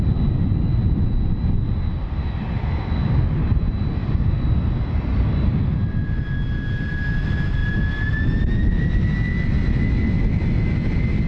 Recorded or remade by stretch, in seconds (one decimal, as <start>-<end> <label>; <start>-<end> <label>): 0.0-11.3 recorded